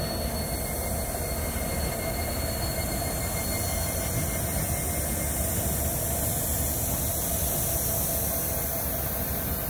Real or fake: real